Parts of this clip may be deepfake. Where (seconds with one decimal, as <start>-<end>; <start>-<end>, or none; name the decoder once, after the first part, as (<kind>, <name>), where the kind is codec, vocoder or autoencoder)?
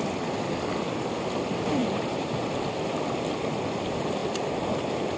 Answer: 1.8-2.7 (vocoder, BigVGAN v2)